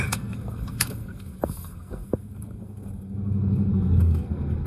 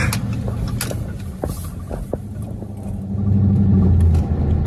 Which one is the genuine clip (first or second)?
second